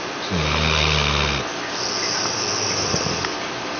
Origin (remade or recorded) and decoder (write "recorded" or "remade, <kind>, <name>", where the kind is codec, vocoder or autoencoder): recorded